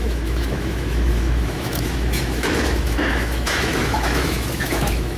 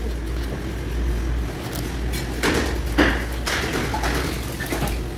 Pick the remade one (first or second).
first